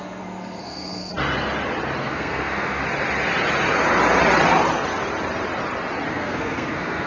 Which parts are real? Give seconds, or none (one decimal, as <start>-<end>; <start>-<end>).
1.1-2.0; 2.8-6.1